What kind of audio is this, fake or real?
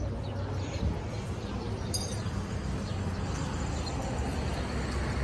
real